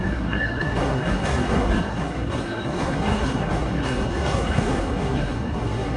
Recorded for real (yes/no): no